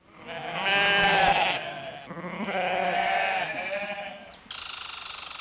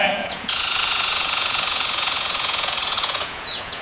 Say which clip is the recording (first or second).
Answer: first